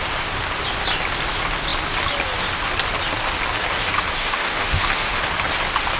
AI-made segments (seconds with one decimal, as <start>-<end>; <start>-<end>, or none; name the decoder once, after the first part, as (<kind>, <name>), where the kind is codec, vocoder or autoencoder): 4.2-5.2 (autoencoder, DAC-VAE)